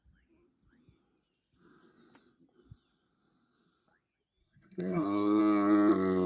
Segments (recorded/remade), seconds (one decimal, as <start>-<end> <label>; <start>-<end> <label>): 0.0-4.4 recorded; 4.4-5.4 remade; 5.4-6.3 recorded